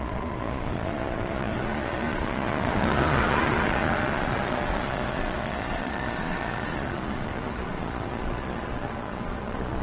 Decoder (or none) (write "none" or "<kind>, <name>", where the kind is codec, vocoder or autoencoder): vocoder, Vocos